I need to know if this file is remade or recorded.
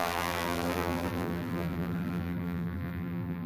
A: remade